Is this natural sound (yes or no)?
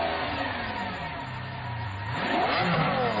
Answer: yes